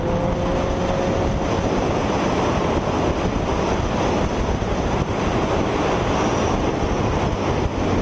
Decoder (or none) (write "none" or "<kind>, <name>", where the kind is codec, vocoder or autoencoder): none